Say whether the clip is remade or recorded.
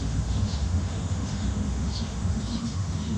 remade